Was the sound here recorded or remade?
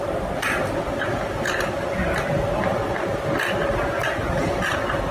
recorded